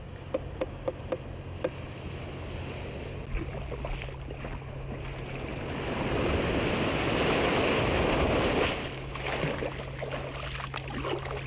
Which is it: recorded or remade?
recorded